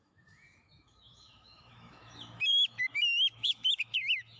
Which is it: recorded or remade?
remade